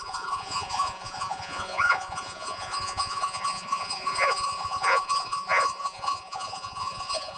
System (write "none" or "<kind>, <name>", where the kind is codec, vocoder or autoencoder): vocoder, Vocos